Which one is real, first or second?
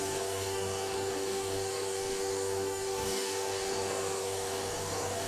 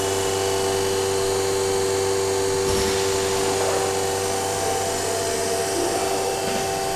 second